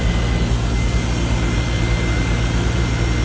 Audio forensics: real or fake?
real